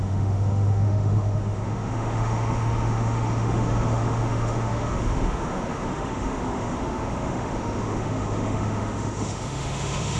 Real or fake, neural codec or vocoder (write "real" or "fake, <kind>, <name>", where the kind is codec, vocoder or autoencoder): fake, autoencoder, DAC-VAE